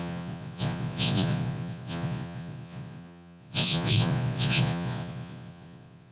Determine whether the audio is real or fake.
fake